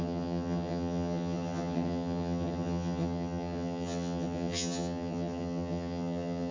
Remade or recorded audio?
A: remade